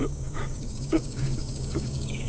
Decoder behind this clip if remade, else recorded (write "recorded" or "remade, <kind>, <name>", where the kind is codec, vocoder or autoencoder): remade, codec, DAC